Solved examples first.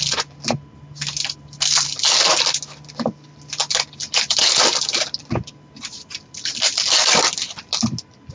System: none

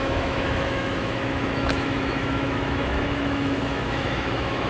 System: autoencoder, DAC-VAE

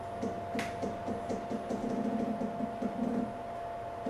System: none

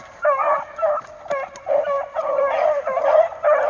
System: vocoder, BigVGAN v2